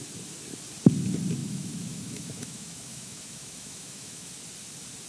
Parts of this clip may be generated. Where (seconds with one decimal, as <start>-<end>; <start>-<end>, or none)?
1.4-4.3